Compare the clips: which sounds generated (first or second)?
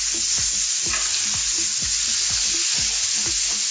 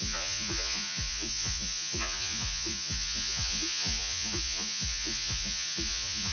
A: second